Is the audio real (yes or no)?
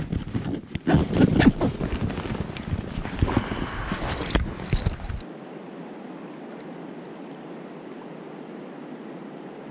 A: yes